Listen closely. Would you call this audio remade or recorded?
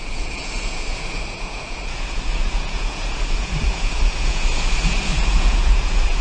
remade